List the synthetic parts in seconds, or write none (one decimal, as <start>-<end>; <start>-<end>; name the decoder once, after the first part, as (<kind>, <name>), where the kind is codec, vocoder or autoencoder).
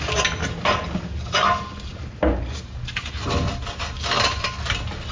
none